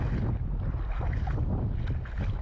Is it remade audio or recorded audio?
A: recorded